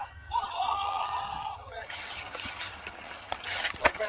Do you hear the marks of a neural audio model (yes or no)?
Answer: yes